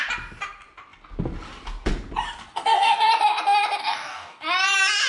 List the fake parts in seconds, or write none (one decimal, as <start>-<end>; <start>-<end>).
2.5-3.1; 3.8-4.4